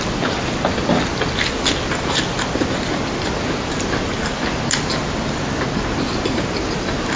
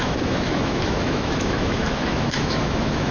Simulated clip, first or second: second